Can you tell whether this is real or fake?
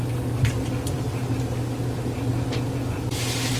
real